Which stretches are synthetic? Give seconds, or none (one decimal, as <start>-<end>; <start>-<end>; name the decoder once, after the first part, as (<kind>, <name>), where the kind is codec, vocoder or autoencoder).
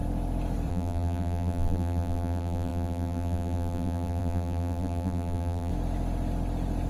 0.7-5.7 (vocoder, BigVGAN v2)